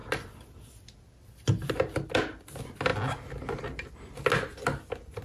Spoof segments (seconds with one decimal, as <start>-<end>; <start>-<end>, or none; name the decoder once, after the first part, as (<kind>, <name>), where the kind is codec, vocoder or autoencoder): none